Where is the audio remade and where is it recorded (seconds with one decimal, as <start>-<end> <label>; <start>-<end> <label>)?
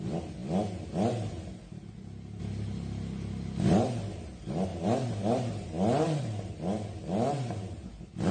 0.0-8.3 recorded